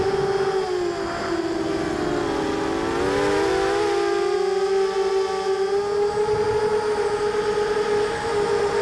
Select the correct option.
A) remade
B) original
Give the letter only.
B